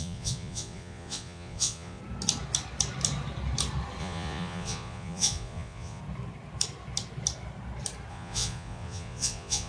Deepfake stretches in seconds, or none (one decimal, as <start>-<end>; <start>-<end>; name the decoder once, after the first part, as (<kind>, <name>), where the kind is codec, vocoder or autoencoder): 0.0-2.0 (vocoder, Vocos); 4.0-6.0; 8.1-9.7